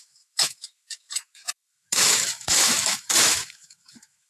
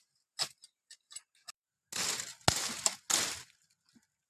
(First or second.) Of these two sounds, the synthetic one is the first